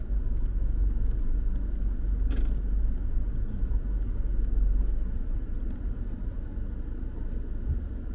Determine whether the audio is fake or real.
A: real